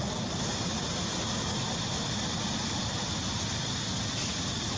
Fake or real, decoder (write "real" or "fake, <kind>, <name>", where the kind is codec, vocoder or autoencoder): real